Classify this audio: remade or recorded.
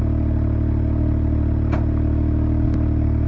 recorded